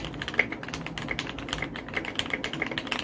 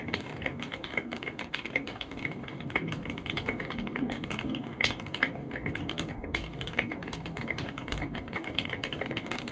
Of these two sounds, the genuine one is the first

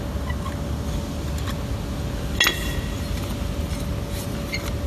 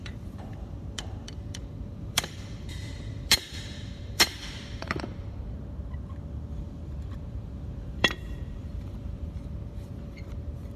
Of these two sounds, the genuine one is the first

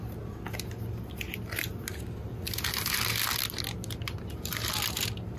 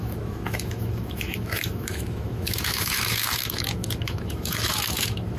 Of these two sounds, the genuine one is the first